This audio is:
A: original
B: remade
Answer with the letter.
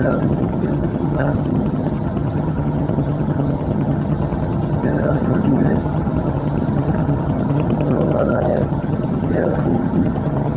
B